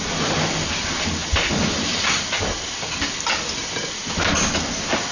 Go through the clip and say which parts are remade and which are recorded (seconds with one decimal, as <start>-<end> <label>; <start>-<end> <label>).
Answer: 0.0-1.2 recorded; 1.2-4.3 remade; 4.3-5.1 recorded